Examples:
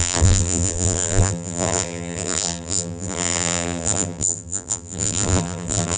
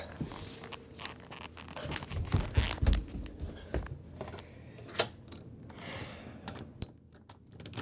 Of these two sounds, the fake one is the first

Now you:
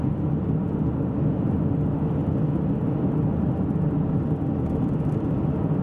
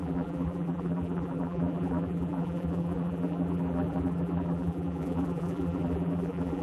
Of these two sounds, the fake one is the second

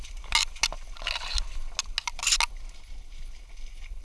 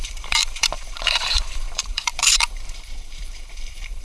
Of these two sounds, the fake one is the second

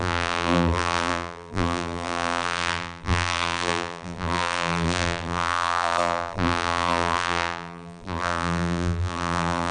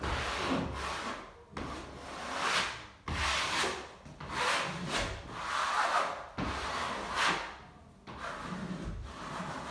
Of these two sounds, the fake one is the first